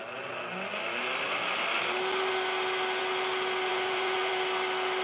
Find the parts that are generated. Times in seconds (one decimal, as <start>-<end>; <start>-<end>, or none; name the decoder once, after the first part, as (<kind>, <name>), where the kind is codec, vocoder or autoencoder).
3.7-4.3 (vocoder, Vocos)